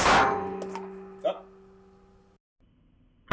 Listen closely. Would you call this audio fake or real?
real